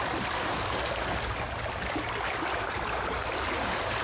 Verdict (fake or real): real